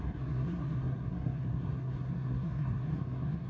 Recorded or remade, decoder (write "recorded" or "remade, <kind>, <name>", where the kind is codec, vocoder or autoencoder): remade, codec, SNAC